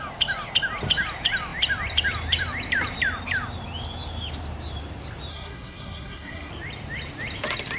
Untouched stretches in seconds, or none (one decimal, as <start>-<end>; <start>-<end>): 0.0-5.3; 6.5-7.8